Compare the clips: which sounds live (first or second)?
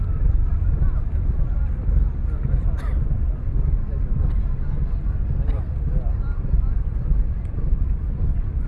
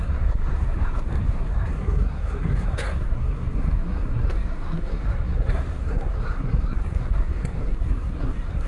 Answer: first